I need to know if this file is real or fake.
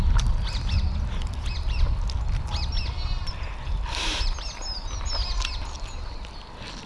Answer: real